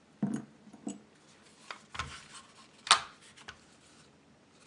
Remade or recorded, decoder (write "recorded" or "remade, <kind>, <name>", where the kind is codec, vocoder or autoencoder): recorded